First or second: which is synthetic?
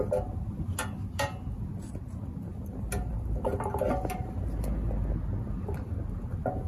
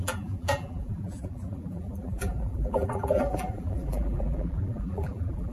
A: second